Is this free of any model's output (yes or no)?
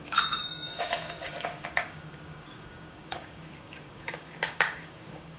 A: no